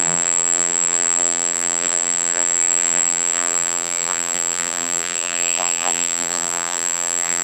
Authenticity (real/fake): fake